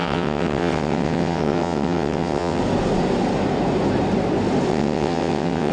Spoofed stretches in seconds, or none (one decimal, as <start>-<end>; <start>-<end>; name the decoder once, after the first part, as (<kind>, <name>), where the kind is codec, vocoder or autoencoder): 0.0-2.6 (vocoder, WaveNeXt); 4.7-5.7